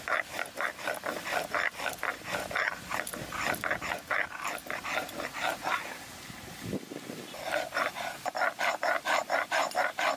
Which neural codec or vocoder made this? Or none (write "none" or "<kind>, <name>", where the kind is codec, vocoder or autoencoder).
vocoder, BigVGAN v2